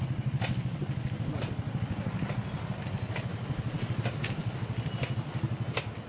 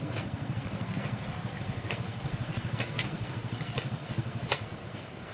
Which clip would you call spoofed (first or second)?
second